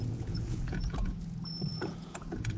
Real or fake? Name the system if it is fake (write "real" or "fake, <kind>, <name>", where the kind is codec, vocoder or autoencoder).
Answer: fake, vocoder, Vocos